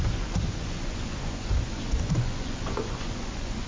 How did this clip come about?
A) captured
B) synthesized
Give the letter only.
B